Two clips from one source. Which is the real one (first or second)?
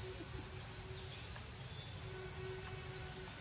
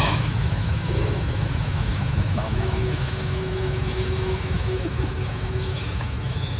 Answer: first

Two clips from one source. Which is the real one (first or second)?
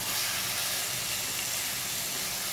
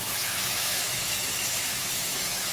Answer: first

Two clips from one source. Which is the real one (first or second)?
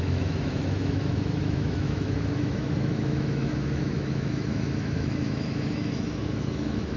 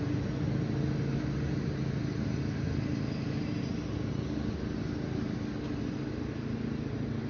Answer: second